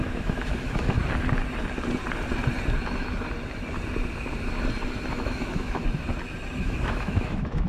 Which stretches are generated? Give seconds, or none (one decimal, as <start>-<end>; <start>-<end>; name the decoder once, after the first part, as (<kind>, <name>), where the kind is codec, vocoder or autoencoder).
0.0-1.0 (autoencoder, DAC-VAE); 5.1-5.8; 6.6-7.7